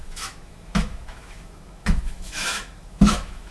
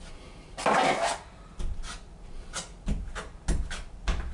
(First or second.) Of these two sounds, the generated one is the first